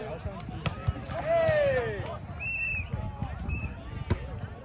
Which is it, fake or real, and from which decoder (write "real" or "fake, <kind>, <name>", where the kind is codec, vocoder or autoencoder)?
real